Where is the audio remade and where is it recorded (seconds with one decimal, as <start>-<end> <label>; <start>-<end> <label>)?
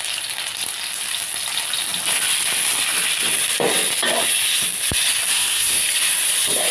0.0-5.3 recorded; 5.3-5.8 remade; 5.8-6.7 recorded